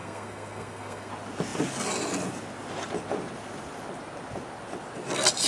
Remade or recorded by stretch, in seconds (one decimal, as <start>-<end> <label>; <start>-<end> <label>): 0.0-1.1 remade; 1.1-5.5 recorded